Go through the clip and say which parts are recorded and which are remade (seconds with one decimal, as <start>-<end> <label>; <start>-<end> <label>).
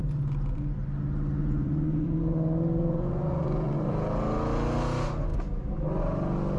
0.0-1.4 recorded; 1.4-3.9 remade; 3.9-6.6 recorded